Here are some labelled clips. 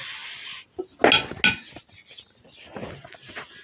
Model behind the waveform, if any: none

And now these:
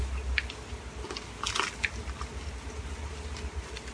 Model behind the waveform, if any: none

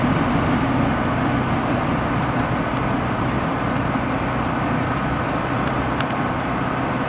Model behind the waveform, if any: none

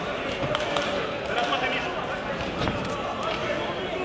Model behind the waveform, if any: none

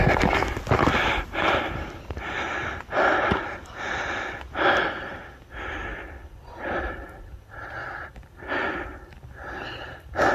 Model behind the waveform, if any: none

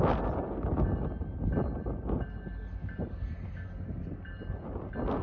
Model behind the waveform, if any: none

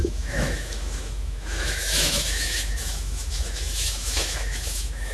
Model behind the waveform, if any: autoencoder, DAC-VAE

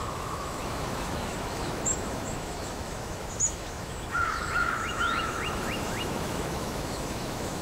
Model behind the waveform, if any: autoencoder, DAC-VAE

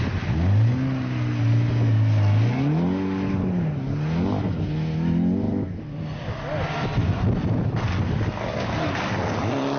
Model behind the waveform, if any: none